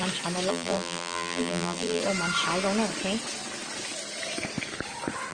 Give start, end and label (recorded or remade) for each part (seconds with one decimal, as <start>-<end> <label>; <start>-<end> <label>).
0.0-0.5 recorded; 0.5-2.0 remade; 2.0-5.3 recorded